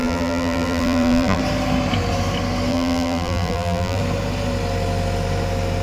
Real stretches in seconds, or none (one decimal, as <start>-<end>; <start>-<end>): 1.4-2.7; 4.0-5.8